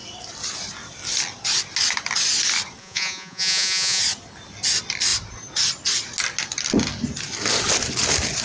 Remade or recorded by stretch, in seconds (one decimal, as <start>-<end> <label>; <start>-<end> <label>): 0.0-2.8 recorded; 2.8-4.0 remade; 4.0-8.4 recorded